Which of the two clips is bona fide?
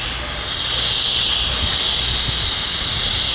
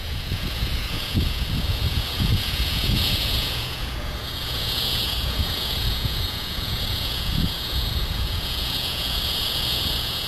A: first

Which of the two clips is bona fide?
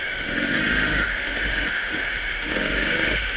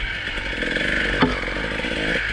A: second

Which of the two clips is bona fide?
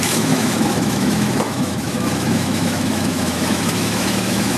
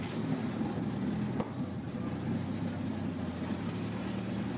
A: second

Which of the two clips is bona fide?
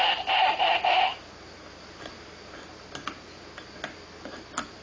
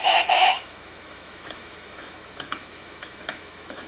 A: first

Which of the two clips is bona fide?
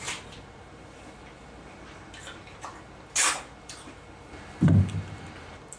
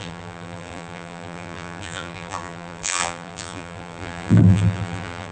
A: first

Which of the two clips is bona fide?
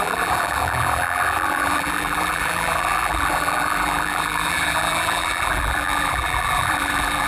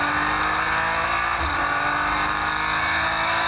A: second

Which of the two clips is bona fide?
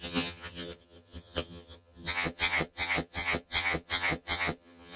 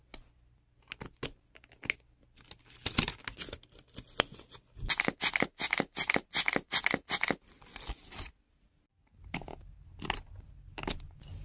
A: second